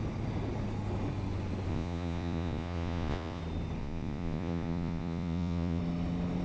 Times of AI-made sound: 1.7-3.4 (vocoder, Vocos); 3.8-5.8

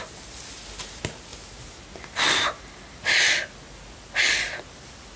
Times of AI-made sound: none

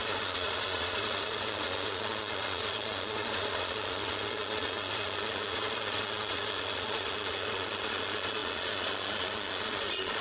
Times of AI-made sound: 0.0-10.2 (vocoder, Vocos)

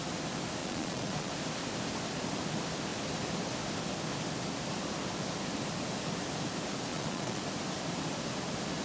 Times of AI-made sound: 0.6-1.3 (vocoder, Vocos); 6.9-7.4

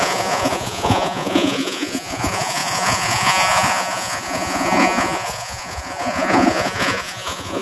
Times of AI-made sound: 0.0-7.6 (vocoder, Vocos)